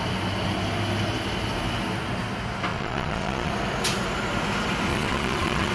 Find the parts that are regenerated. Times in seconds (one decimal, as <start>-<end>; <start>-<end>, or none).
2.7-3.5; 4.9-5.7